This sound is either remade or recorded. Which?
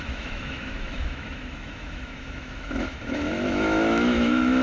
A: remade